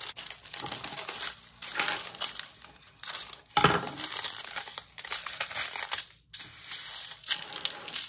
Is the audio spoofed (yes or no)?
no